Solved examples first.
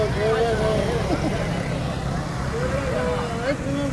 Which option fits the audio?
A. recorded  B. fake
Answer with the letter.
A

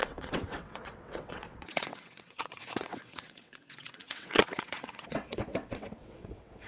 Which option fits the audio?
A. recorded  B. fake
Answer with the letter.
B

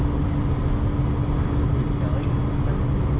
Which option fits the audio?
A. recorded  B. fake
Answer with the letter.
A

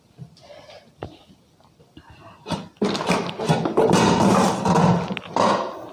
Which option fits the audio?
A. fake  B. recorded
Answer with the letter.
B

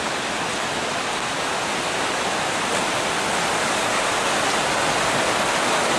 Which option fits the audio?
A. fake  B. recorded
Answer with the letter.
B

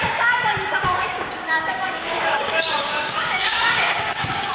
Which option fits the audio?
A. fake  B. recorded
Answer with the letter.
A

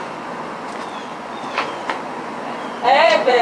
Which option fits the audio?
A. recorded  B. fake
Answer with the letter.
B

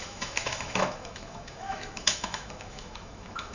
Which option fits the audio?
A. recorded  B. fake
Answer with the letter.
B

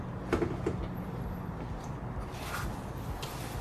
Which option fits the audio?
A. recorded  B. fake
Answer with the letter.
A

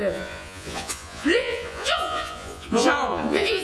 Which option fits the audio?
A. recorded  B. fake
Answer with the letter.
B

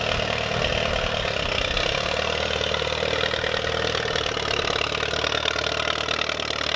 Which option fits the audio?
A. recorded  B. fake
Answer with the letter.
A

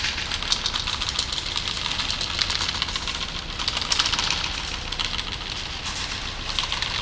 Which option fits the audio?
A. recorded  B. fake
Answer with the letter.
A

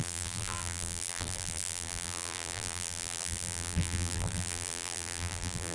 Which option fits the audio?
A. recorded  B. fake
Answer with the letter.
B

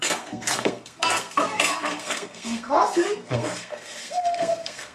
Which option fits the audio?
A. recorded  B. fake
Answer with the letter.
B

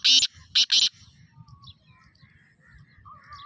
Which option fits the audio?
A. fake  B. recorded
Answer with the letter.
B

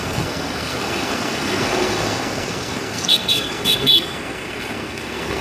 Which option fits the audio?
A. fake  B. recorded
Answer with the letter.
A